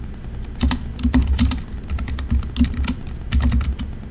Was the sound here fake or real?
real